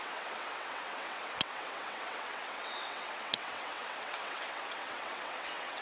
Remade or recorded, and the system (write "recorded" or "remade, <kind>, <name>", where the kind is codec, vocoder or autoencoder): remade, vocoder, WaveNeXt